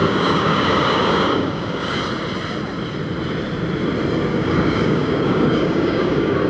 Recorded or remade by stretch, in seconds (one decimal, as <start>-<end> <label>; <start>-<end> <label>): 0.0-2.0 remade; 2.0-4.3 recorded; 4.3-6.5 remade

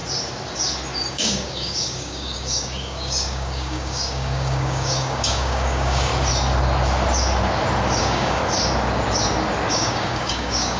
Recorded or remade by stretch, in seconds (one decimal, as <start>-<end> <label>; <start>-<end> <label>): 0.0-1.1 recorded; 1.1-6.1 remade; 6.1-8.0 recorded; 8.0-8.4 remade; 8.4-9.7 recorded; 9.7-10.8 remade